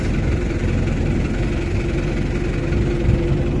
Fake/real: real